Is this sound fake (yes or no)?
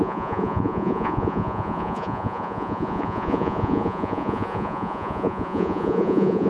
yes